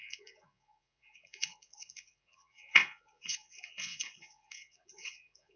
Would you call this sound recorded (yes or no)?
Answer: no